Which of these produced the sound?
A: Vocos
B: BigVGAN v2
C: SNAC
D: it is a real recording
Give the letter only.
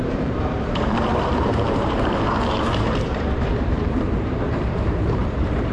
B